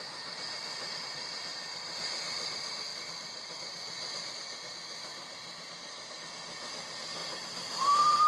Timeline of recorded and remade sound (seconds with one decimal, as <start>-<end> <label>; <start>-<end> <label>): 0.0-1.5 recorded; 1.5-2.3 remade; 2.3-5.1 recorded; 5.1-6.1 remade; 6.1-7.2 recorded; 7.2-8.3 remade